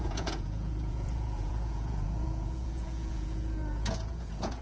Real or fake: fake